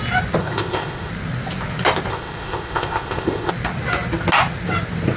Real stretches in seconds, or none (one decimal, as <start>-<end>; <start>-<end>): 0.0-0.4; 1.1-2.1; 3.5-5.2